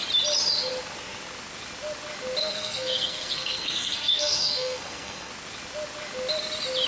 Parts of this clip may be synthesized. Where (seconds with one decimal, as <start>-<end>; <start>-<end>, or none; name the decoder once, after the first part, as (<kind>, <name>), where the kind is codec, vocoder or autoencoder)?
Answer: 2.4-5.3 (codec, SNAC)